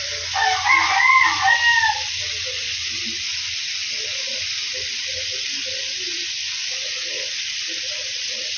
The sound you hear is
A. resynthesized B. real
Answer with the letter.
B